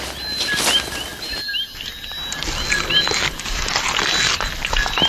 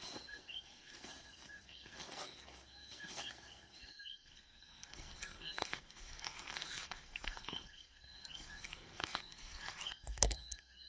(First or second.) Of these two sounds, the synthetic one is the second